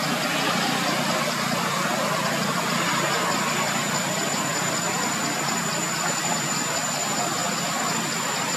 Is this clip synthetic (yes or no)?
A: no